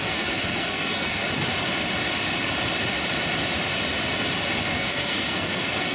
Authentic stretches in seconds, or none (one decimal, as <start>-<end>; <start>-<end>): 1.2-4.7